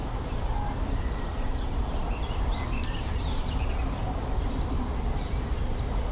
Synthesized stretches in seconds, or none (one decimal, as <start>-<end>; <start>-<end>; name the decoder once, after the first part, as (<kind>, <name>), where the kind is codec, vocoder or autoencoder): none